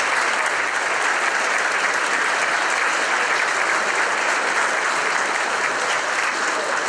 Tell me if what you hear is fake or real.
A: real